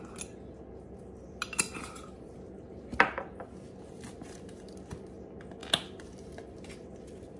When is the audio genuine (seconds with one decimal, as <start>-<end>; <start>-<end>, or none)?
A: 0.0-7.4